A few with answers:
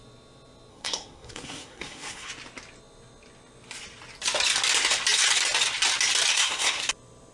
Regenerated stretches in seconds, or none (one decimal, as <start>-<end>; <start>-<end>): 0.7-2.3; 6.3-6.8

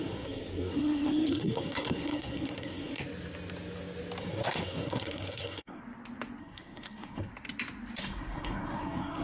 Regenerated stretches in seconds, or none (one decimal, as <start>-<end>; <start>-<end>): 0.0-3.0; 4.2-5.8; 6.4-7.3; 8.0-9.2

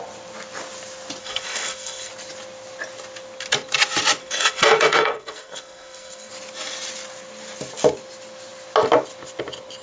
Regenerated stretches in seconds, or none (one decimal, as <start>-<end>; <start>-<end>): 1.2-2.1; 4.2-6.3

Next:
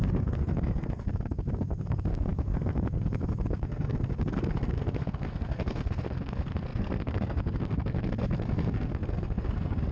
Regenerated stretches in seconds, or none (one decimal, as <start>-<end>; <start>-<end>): 0.0-9.9

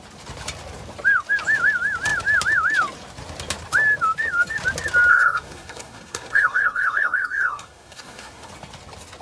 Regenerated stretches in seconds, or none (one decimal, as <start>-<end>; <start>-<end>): 5.1-8.5

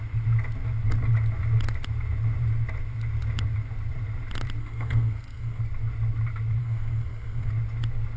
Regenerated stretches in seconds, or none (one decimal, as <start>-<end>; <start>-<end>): 4.6-5.6; 6.6-7.5